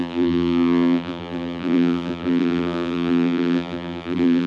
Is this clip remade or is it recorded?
remade